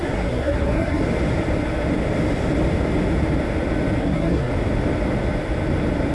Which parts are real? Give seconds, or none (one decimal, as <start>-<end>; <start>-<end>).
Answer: 1.0-4.0; 4.5-6.1